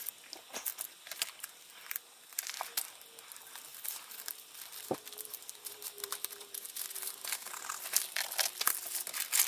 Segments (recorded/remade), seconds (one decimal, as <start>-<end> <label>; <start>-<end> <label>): 0.0-3.7 recorded; 3.7-7.9 remade; 7.9-9.5 recorded